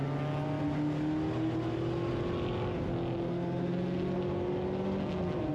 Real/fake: real